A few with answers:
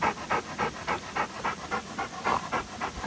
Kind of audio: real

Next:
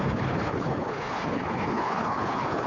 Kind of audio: fake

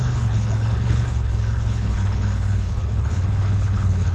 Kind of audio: fake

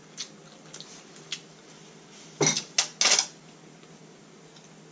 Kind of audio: real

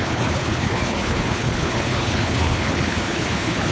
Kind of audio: fake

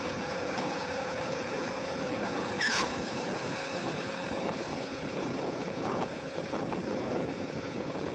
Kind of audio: fake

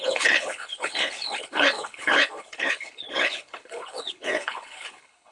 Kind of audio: fake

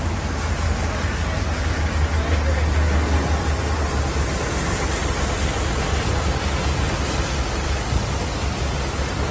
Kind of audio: real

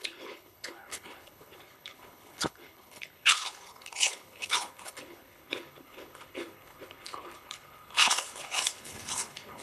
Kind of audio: fake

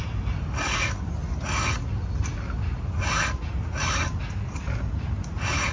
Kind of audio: real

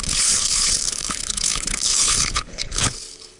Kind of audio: fake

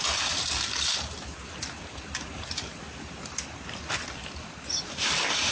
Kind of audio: real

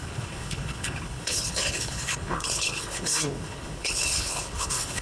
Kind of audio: fake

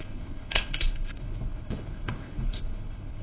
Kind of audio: fake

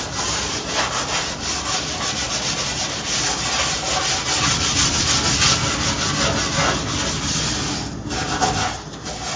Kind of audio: real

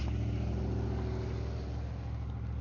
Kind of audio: real